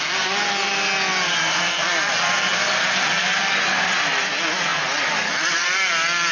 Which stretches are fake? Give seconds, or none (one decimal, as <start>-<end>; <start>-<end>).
none